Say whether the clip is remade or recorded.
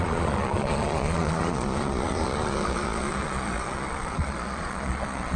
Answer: remade